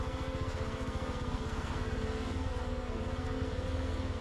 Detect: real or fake fake